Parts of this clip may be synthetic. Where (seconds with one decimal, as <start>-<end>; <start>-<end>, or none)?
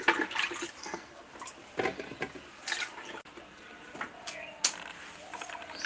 0.8-1.3